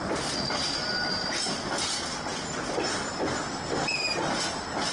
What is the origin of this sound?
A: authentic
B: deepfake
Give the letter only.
A